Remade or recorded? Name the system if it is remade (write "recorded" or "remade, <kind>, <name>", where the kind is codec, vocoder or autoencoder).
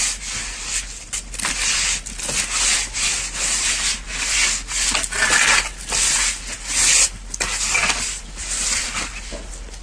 recorded